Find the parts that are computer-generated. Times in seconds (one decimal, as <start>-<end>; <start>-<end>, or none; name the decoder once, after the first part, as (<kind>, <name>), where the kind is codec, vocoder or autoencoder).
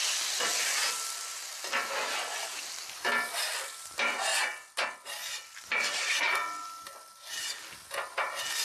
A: none